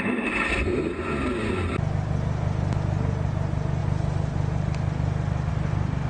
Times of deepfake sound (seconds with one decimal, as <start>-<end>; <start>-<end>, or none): none